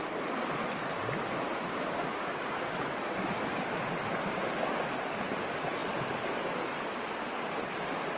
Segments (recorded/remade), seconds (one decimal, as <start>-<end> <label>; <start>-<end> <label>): 0.0-1.5 recorded; 1.5-2.6 remade; 2.6-8.2 recorded